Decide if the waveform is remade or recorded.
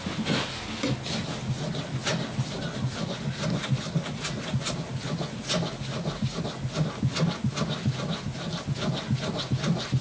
recorded